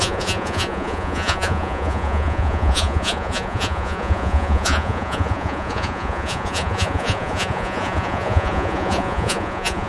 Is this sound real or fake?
fake